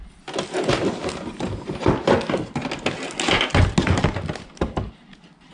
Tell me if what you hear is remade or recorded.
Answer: recorded